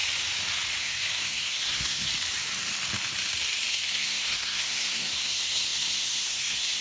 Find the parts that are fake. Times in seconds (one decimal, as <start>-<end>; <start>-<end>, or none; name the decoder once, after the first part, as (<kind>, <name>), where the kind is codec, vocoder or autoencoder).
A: 0.8-2.1 (codec, SNAC); 3.7-6.8